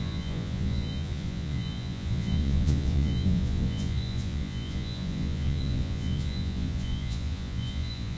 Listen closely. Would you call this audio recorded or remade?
remade